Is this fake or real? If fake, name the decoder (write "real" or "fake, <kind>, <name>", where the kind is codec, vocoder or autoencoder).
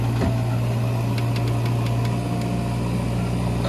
real